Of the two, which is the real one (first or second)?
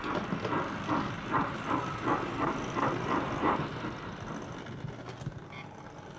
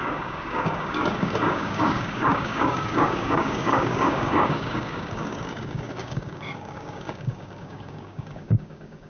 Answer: first